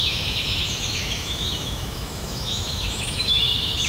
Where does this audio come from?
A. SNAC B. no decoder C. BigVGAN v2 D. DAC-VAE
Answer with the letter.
D